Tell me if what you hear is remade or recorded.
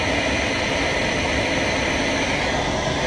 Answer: recorded